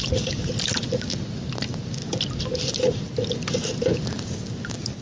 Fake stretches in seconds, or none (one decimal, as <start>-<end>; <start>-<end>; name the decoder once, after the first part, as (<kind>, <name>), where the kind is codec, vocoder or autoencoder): none